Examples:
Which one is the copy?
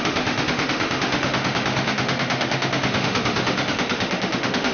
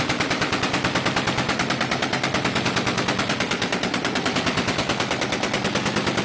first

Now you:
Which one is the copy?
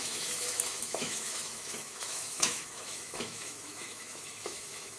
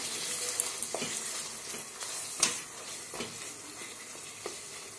first